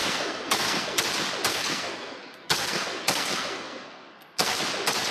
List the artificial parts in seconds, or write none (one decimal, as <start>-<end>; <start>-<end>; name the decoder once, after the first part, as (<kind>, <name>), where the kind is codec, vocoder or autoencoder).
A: 0.0-1.0 (codec, SNAC); 1.5-4.6